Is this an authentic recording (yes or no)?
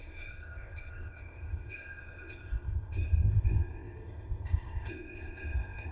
no